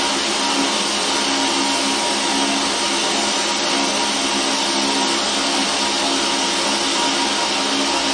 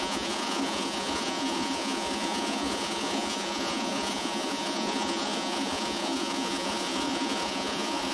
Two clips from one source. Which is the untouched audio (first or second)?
first